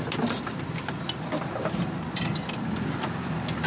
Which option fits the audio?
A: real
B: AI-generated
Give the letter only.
A